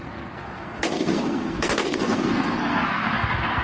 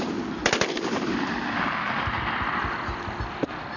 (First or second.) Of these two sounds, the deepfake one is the first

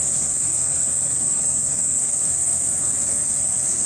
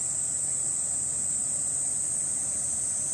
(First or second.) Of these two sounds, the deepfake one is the first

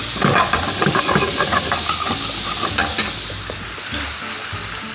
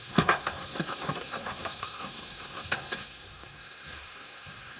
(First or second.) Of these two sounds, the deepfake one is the second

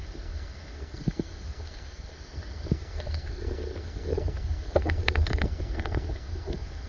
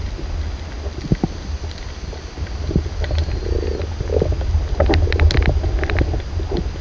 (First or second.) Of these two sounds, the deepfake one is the first